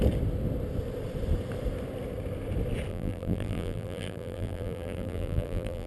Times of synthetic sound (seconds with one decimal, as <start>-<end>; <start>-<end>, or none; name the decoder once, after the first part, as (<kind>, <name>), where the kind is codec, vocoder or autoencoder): 2.9-5.9 (vocoder, BigVGAN v2)

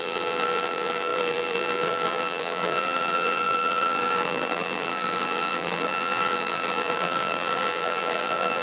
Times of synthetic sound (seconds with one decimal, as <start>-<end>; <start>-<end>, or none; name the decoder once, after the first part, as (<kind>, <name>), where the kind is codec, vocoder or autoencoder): 0.0-8.6 (vocoder, BigVGAN v2)

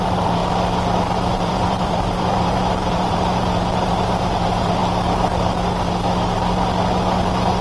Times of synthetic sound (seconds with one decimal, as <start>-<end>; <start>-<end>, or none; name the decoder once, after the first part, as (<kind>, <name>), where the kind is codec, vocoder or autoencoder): 0.0-0.4 (vocoder, BigVGAN v2); 1.3-4.8

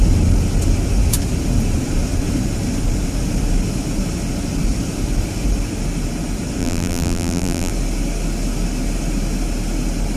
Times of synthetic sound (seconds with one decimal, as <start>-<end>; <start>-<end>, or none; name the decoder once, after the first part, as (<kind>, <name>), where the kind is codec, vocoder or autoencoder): 6.6-7.7 (vocoder, BigVGAN v2)

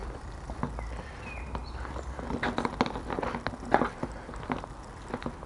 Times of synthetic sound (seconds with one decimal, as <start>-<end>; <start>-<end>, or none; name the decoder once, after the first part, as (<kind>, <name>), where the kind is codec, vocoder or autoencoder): 0.0-0.6 (vocoder, BigVGAN v2)

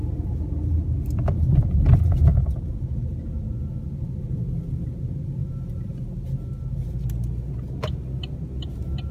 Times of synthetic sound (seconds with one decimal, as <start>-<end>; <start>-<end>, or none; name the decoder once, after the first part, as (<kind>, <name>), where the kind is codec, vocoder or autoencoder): 5.4-5.9 (vocoder, BigVGAN v2)